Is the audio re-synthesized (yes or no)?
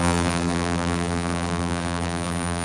yes